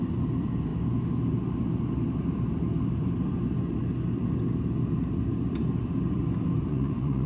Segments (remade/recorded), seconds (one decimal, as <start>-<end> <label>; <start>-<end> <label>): 0.0-6.7 recorded; 6.7-7.3 remade